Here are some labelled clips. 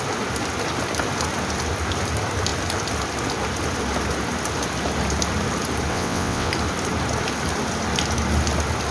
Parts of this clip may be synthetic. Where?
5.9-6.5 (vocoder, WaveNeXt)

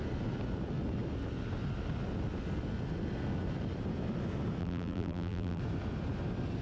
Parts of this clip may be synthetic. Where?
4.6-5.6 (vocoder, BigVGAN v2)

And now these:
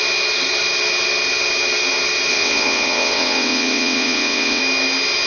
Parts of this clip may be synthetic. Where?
2.3-4.6 (vocoder, WaveNeXt)